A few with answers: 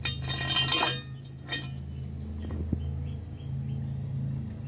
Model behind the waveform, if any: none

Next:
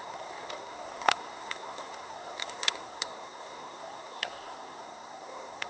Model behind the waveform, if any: codec, SNAC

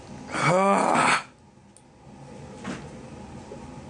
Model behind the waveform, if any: none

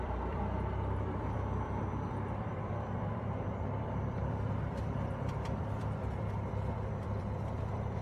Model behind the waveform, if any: vocoder, BigVGAN v2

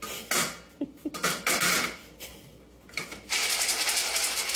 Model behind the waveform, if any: none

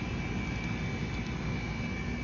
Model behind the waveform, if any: none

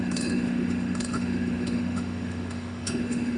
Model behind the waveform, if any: autoencoder, DAC-VAE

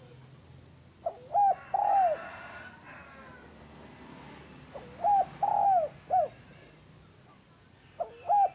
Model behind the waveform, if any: none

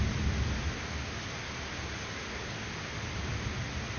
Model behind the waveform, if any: none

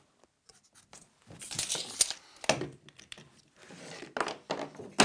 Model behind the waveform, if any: none